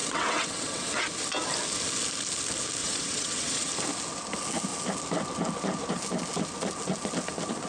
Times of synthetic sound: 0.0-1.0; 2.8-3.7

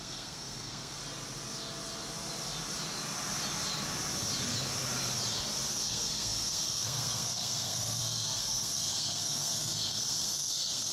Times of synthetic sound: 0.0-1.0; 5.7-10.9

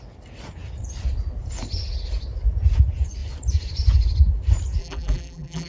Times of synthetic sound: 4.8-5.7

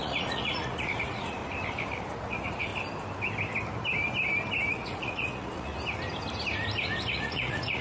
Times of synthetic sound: 0.0-1.4; 2.1-2.7; 4.7-5.7; 7.1-7.8

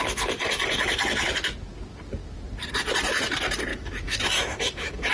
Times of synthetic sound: 3.7-5.1